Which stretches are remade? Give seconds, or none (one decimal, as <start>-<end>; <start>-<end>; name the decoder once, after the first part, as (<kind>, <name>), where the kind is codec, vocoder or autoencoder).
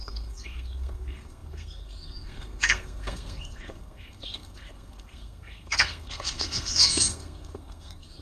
0.0-8.2 (codec, SNAC)